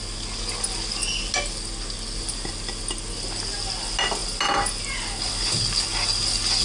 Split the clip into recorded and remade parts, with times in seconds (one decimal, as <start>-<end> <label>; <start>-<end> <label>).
0.0-6.6 recorded